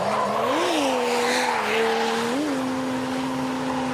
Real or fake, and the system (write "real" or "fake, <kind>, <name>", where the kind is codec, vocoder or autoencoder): real